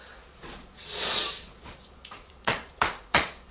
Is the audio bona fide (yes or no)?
no